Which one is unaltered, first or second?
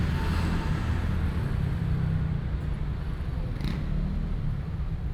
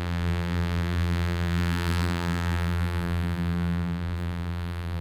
first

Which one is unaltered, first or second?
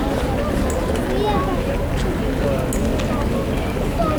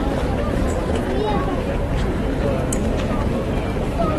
first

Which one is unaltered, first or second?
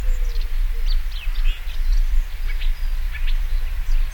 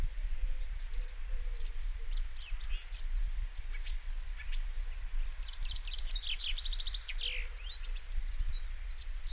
first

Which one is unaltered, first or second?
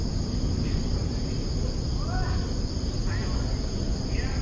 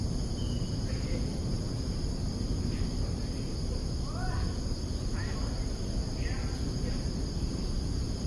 first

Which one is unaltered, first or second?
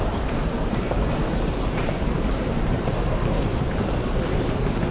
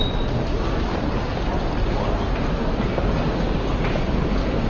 second